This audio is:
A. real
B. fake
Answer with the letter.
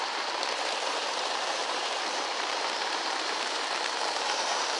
B